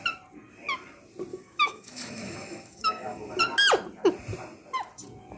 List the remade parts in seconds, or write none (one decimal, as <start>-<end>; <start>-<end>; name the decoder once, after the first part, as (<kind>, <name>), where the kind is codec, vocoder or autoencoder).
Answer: 1.3-3.4 (autoencoder, DAC-VAE)